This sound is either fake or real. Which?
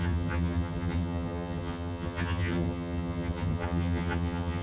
fake